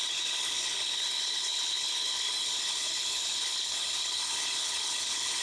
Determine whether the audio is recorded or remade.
remade